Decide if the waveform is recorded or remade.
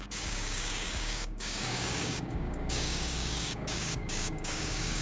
remade